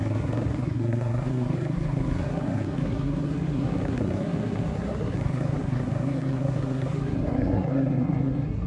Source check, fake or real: fake